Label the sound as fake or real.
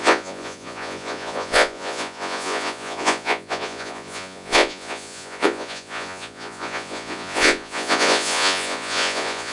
fake